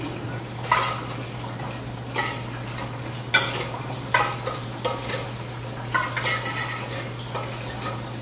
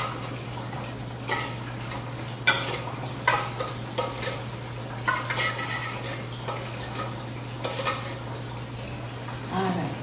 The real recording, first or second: first